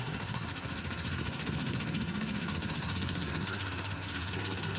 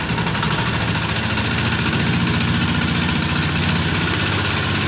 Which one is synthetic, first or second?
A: first